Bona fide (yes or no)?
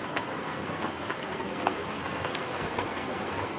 no